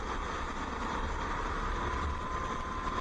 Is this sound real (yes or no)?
yes